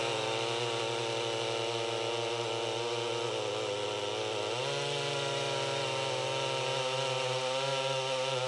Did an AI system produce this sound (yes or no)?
no